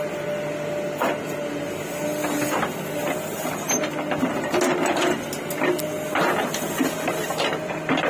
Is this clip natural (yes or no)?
yes